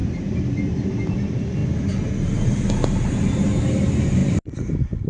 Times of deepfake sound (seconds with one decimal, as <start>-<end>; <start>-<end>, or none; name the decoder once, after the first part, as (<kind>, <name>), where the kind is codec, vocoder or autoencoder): 0.0-1.1 (vocoder, BigVGAN v2); 4.2-5.1